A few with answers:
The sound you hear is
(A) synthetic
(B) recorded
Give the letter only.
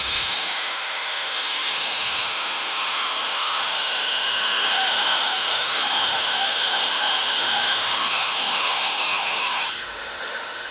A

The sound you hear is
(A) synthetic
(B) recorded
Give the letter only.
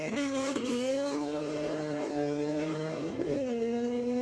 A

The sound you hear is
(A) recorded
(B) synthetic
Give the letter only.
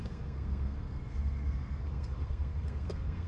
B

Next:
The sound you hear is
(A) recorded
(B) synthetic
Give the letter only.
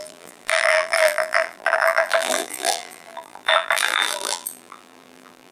B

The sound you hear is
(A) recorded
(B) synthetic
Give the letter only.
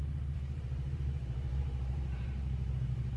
B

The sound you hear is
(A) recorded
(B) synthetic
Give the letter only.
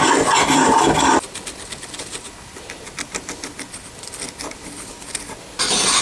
A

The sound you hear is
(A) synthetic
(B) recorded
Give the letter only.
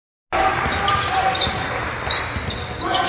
B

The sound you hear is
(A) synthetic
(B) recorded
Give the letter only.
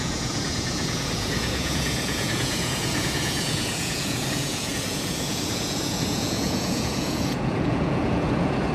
A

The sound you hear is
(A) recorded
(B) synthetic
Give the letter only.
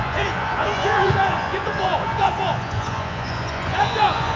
B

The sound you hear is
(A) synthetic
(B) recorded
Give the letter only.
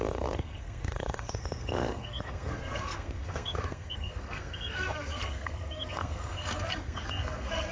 A